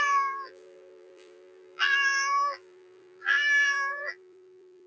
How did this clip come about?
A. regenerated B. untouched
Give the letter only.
A